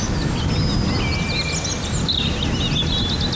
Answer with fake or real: real